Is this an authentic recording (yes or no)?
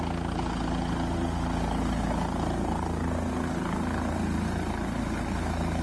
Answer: yes